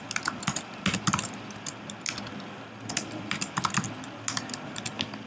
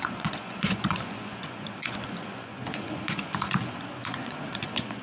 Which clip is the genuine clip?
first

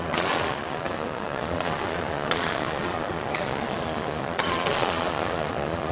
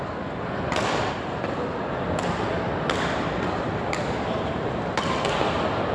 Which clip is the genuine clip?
second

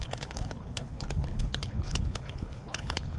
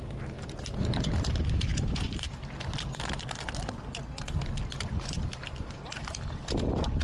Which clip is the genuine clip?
second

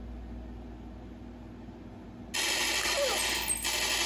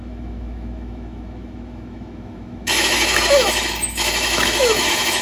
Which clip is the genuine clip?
first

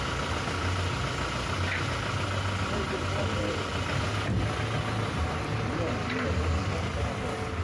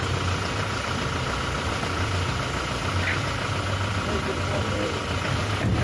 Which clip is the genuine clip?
first